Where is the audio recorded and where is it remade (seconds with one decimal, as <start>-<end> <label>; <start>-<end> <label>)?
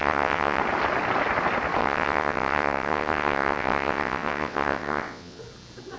0.0-0.6 remade; 0.6-1.8 recorded; 1.8-5.4 remade; 5.4-6.0 recorded